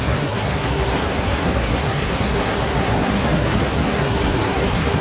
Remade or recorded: remade